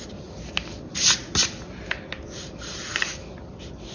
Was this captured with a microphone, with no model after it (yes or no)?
yes